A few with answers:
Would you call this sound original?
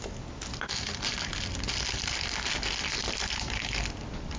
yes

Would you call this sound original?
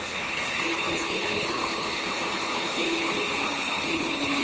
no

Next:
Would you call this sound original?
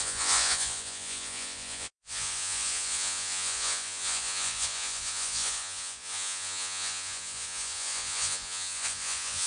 no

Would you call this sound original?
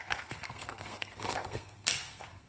no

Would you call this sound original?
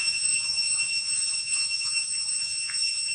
no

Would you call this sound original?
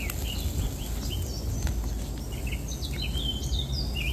yes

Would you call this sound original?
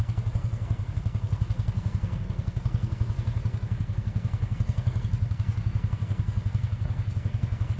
no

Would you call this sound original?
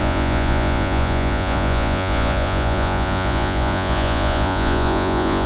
no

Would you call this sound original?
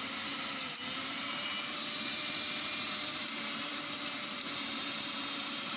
no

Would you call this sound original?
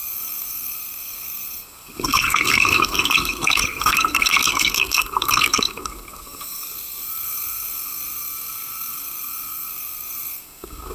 no